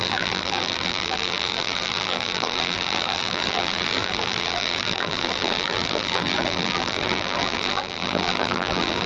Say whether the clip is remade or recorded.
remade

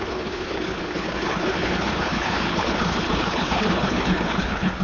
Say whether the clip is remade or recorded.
remade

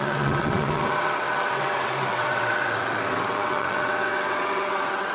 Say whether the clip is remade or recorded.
remade